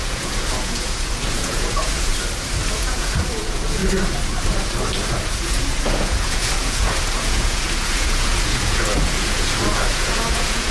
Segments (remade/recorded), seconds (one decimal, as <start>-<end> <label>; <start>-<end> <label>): 0.0-2.1 remade; 2.1-2.7 recorded; 2.7-3.8 remade; 3.8-5.1 recorded; 5.1-10.7 remade